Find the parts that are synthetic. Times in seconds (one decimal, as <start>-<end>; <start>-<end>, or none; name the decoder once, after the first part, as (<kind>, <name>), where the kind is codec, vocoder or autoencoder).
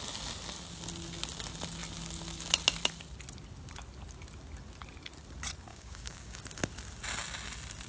5.7-6.4 (codec, DAC)